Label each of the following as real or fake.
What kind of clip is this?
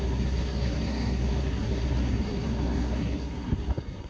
fake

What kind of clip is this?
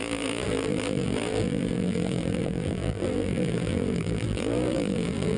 fake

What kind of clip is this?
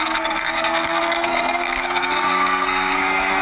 fake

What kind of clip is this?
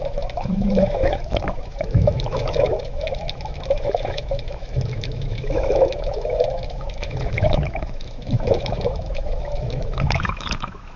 fake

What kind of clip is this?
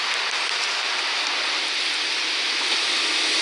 real